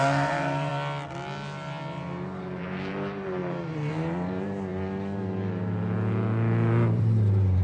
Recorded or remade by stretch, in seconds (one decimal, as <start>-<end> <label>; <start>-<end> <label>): 0.0-0.7 remade; 0.7-2.4 recorded; 2.4-4.7 remade; 4.7-7.6 recorded